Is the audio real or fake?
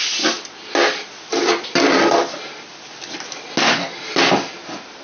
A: real